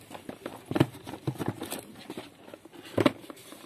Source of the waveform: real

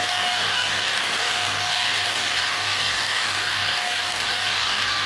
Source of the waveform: fake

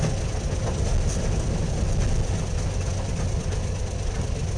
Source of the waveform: real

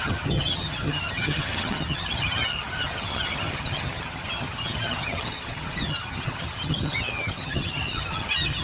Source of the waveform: fake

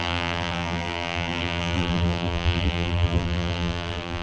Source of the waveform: fake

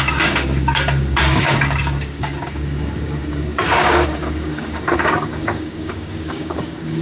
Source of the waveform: fake